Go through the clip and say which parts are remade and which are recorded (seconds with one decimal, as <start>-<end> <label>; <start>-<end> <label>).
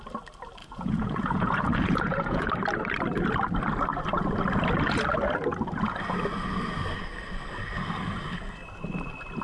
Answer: 0.0-0.6 recorded; 0.6-2.5 remade; 2.5-9.4 recorded